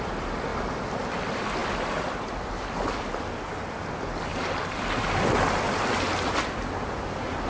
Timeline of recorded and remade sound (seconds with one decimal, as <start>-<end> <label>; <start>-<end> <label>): 0.0-7.5 recorded